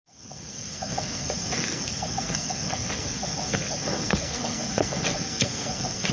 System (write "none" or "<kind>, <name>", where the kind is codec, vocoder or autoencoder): codec, SNAC